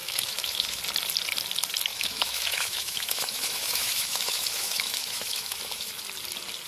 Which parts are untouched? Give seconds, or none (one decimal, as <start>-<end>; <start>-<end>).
0.8-1.9; 5.9-6.7